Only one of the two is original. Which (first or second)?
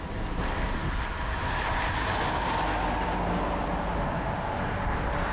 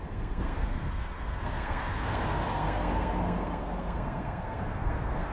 first